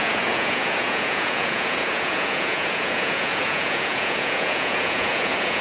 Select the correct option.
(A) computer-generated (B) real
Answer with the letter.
A